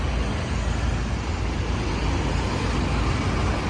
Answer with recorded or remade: recorded